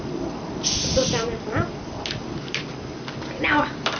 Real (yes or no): yes